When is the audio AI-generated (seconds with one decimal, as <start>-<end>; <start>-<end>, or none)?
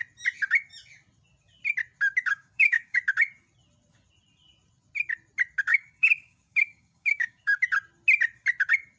2.3-3.0; 5.7-7.6